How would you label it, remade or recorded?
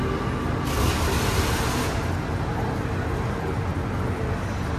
recorded